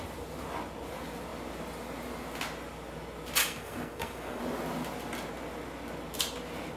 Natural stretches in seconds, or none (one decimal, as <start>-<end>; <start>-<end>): 0.0-3.4; 4.4-6.8